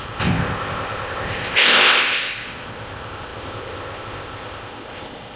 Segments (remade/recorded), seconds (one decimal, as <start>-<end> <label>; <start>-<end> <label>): 0.0-5.4 remade

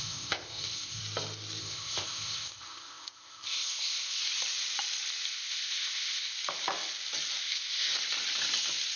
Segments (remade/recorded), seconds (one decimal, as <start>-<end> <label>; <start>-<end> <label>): 0.0-1.0 remade; 1.0-1.6 recorded; 1.6-4.2 remade; 4.2-5.3 recorded; 5.3-6.3 remade; 6.3-7.4 recorded; 7.4-7.9 remade; 7.9-9.0 recorded

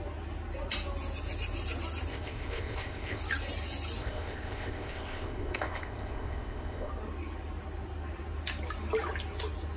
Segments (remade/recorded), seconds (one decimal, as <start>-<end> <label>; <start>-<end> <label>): 0.0-2.1 recorded; 2.1-3.2 remade; 3.2-4.0 recorded; 4.0-6.9 remade; 6.9-9.8 recorded

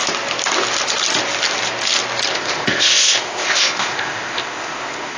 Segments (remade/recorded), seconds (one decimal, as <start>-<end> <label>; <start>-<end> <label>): 0.0-2.3 recorded; 2.3-5.2 remade

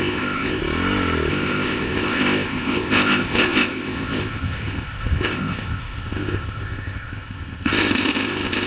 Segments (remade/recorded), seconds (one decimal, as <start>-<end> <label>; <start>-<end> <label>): 0.0-0.6 remade; 0.6-1.3 recorded; 1.3-8.7 remade

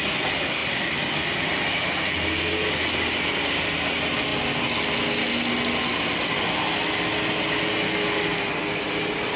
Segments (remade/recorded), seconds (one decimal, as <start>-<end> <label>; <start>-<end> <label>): 0.0-9.4 recorded

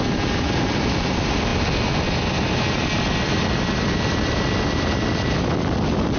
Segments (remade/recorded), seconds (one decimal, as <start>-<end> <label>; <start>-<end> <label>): 0.0-6.2 recorded

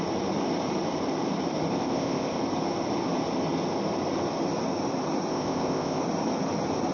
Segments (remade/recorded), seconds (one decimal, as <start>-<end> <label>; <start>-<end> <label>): 0.0-1.7 recorded; 1.7-2.4 remade; 2.4-5.3 recorded; 5.3-6.0 remade; 6.0-6.9 recorded